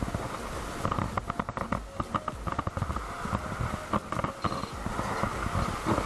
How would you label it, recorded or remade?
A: recorded